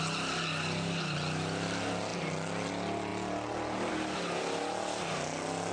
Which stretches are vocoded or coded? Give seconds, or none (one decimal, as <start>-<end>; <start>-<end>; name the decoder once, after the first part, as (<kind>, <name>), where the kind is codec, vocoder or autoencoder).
none